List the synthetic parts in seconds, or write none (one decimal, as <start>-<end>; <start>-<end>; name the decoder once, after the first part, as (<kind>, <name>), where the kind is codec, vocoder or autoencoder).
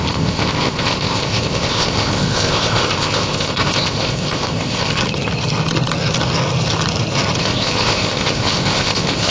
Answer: 0.0-5.0 (codec, ZipCodec); 7.4-9.3